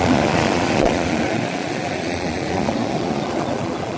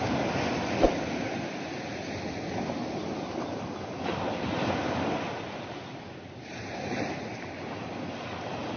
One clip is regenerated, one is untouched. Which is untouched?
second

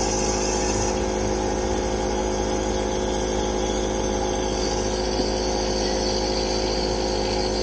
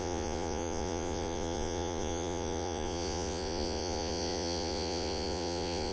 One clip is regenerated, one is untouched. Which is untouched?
first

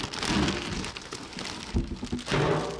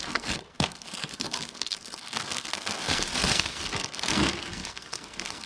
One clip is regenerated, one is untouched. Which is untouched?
first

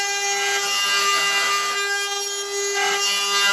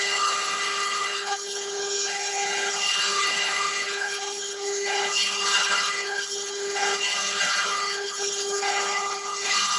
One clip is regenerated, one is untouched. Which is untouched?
first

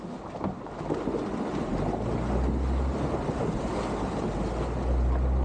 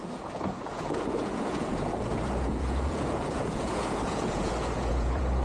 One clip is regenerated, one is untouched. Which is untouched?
first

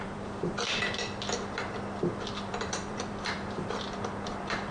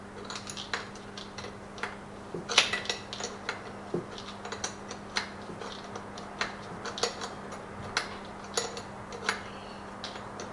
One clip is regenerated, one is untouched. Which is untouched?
second